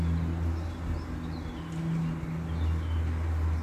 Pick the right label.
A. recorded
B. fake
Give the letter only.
A